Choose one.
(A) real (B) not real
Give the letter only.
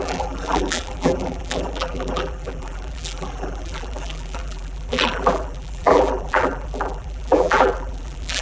B